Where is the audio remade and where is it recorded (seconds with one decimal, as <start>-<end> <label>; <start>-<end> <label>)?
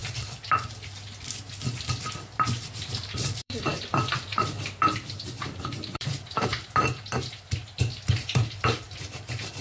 0.0-1.7 recorded; 1.7-9.6 remade